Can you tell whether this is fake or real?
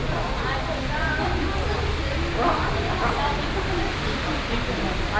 real